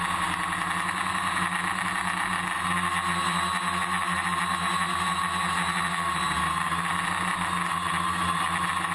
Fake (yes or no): no